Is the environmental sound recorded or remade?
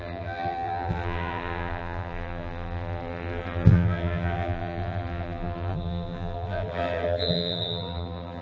remade